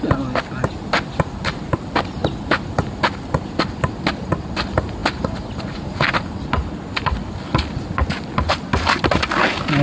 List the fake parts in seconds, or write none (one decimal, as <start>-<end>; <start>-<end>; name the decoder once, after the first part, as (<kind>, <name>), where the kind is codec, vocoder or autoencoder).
none